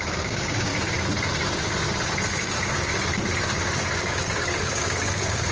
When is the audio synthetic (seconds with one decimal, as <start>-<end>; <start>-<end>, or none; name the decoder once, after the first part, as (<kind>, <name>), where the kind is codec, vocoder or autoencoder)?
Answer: 0.0-0.7 (codec, DAC); 2.3-2.9; 4.0-5.5